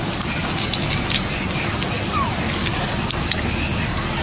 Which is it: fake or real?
real